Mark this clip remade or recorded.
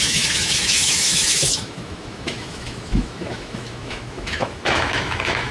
remade